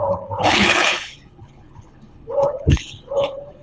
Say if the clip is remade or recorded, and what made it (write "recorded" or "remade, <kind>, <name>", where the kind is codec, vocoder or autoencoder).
remade, codec, HILCodec